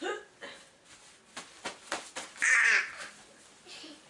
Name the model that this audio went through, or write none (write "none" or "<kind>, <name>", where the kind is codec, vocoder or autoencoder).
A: none